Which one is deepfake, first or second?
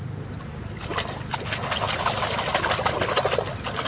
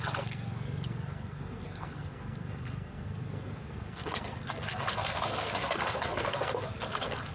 second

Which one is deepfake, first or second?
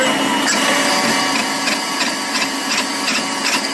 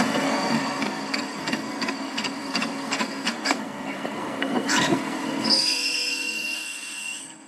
second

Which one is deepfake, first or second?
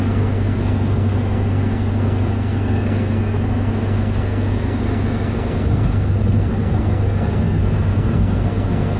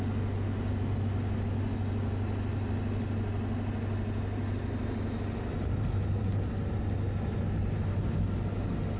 first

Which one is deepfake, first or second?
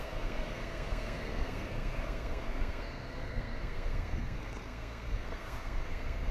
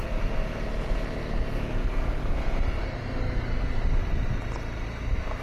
first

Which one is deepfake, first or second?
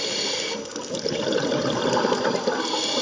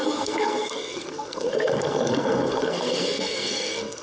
second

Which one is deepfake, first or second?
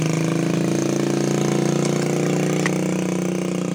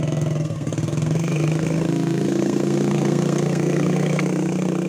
second